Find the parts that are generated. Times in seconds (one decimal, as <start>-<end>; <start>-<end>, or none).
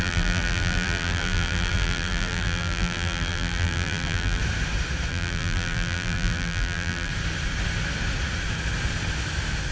0.0-4.4; 5.1-7.1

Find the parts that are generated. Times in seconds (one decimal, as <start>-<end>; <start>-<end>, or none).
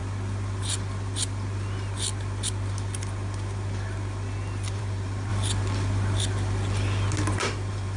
4.8-5.3; 7.4-8.0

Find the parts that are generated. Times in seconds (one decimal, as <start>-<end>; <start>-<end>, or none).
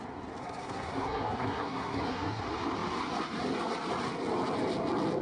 0.4-2.4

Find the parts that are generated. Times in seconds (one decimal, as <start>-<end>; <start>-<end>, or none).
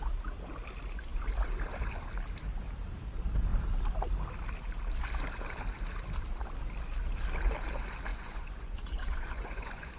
8.1-10.0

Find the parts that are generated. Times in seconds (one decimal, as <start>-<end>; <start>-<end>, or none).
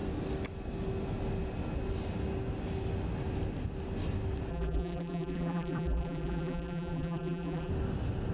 4.5-7.7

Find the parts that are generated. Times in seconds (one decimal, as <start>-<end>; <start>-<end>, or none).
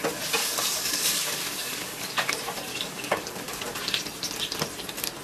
0.4-2.3; 2.7-3.6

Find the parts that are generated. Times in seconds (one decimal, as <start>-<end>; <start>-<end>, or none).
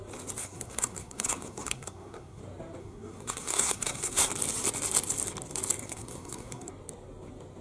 0.4-2.4; 2.8-4.3; 5.8-6.7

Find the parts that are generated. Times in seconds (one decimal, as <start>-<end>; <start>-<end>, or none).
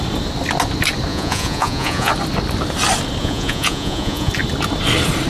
1.1-2.1; 3.2-4.3